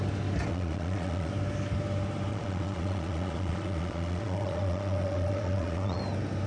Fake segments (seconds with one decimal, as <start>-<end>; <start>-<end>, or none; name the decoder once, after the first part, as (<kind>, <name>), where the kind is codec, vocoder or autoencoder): 0.5-1.3 (vocoder, Vocos); 2.3-6.0